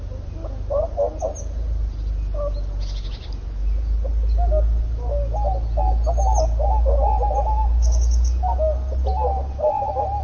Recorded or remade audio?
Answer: recorded